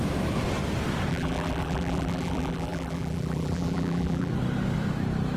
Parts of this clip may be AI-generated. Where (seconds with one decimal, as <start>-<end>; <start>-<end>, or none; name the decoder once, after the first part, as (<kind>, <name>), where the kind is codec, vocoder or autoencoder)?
1.1-4.3 (vocoder, BigVGAN v2)